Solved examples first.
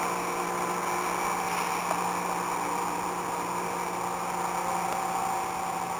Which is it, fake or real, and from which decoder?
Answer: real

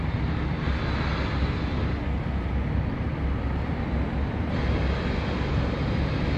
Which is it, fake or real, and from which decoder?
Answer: real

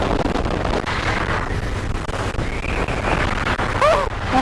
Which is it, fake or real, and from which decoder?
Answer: real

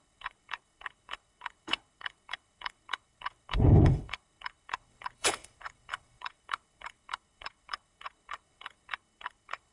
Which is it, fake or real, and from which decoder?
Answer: fake, codec, HILCodec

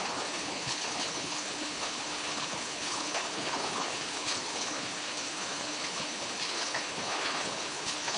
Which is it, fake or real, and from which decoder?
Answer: fake, codec, HILCodec